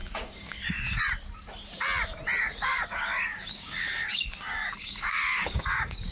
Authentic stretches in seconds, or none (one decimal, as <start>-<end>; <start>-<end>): 1.0-2.4